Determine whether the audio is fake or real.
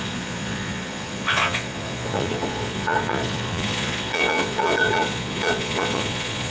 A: fake